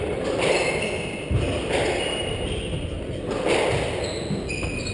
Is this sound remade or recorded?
recorded